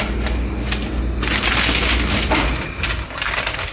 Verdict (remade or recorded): recorded